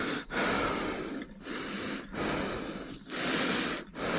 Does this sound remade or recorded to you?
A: recorded